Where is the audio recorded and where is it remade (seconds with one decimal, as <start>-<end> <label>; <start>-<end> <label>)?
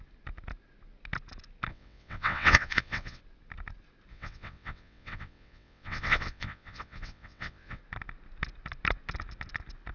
0.0-1.7 recorded; 1.7-3.2 remade; 3.2-4.1 recorded; 4.1-7.8 remade; 7.8-9.9 recorded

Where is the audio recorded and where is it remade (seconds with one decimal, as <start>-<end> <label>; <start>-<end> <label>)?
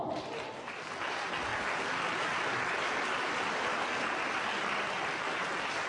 0.0-5.9 recorded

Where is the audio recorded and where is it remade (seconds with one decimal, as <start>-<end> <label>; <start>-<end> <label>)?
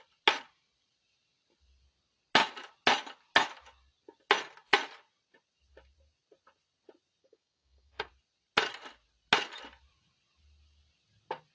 0.0-7.2 recorded; 7.2-8.1 remade; 8.1-11.5 recorded